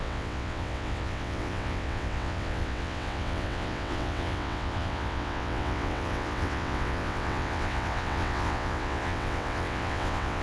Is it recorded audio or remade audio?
remade